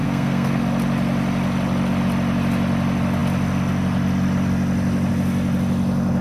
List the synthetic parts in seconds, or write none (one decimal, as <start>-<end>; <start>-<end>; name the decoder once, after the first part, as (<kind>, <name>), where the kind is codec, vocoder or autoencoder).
0.0-0.6 (codec, SNAC)